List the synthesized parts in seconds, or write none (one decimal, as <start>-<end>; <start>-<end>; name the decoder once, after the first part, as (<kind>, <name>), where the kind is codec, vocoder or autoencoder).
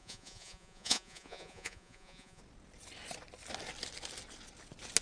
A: 0.0-2.4 (vocoder, Vocos)